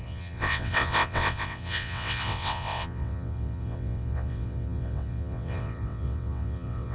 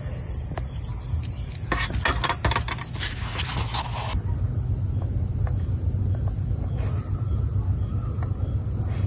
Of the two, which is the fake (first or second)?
first